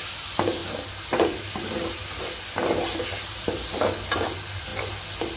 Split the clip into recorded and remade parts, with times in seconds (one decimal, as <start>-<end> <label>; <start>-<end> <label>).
0.0-5.4 recorded